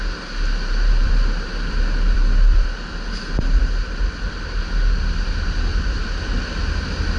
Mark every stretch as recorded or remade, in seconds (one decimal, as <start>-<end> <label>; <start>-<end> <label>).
0.0-1.0 recorded; 1.0-3.3 remade; 3.3-7.2 recorded